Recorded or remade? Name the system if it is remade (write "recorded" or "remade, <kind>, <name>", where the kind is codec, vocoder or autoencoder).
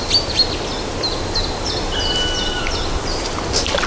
recorded